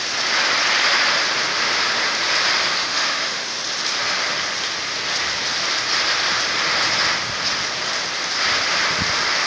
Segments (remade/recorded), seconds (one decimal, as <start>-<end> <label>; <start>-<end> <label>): 0.0-2.8 recorded; 2.8-3.6 remade; 3.6-9.5 recorded